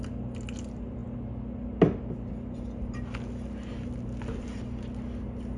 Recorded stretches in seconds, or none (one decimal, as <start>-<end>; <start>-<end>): 0.0-5.6